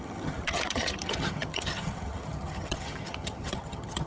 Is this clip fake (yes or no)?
yes